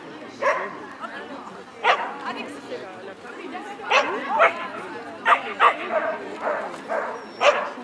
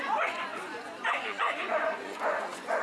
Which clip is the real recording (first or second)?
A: first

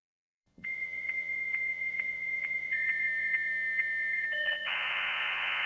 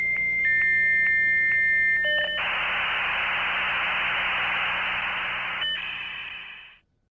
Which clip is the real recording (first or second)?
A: second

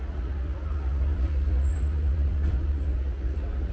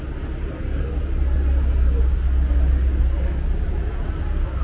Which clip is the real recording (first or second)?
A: second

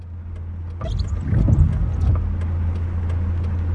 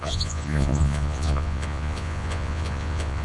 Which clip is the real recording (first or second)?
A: first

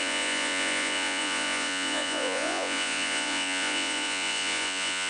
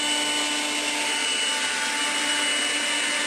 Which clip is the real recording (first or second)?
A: second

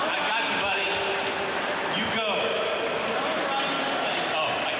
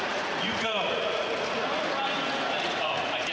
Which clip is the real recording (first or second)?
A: first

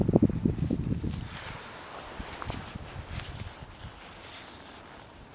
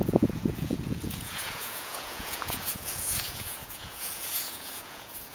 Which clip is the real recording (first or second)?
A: first